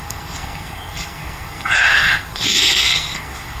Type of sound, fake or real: fake